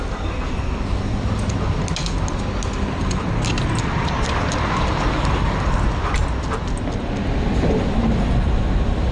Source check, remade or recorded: recorded